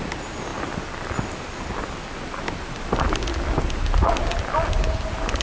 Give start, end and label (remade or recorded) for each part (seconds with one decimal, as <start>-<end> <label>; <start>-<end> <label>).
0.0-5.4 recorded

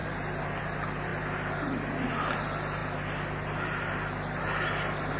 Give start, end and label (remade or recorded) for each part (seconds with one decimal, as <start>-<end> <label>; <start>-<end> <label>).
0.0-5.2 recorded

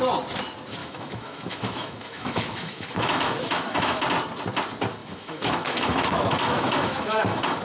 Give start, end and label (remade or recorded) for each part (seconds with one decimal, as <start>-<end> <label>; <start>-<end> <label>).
0.0-0.8 recorded; 0.8-4.0 remade; 4.0-5.0 recorded; 5.0-7.6 remade

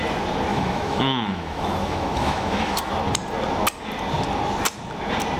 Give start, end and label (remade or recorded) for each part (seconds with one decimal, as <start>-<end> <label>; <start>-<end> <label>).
0.0-0.5 recorded; 0.5-2.9 remade; 2.9-5.4 recorded

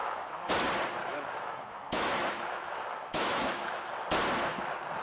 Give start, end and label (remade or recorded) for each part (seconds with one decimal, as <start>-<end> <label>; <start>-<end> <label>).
0.0-0.5 remade; 0.5-1.1 recorded; 1.1-3.9 remade; 3.9-5.0 recorded

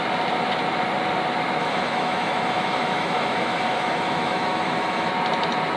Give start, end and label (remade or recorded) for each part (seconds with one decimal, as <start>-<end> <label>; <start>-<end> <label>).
0.0-1.6 recorded; 1.6-5.1 remade; 5.1-5.8 recorded

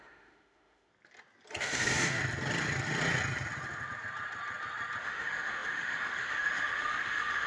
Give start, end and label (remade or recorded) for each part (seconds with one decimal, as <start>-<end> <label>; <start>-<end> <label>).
0.0-0.9 remade; 0.9-1.6 recorded; 1.6-2.2 remade; 2.2-5.0 recorded; 5.0-7.5 remade

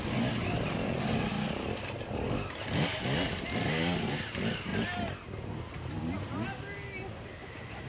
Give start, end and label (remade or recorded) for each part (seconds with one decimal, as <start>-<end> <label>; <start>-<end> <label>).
0.0-7.9 recorded